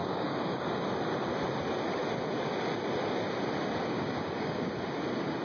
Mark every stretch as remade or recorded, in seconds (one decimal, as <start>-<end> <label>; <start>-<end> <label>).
0.0-0.8 remade; 0.8-3.9 recorded; 3.9-4.7 remade; 4.7-5.4 recorded